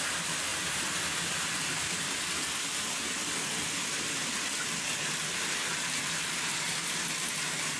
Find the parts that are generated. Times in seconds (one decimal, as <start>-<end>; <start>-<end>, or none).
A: none